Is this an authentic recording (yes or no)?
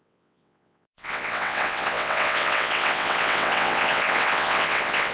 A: no